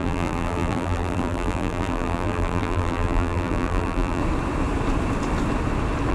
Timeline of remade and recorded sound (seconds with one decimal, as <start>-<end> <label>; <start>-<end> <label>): 0.0-4.2 remade; 4.2-6.1 recorded